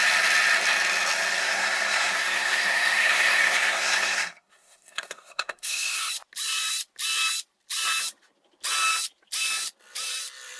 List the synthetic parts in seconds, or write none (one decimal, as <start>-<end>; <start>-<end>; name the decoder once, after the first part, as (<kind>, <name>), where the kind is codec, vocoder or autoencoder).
1.4-6.1 (codec, SNAC)